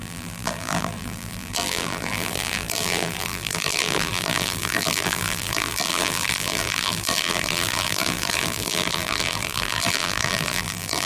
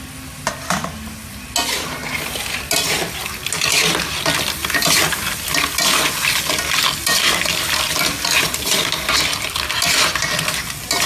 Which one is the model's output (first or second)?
first